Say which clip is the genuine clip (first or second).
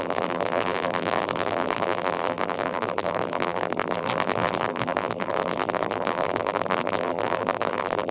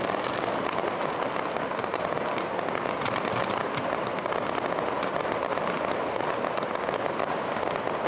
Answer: second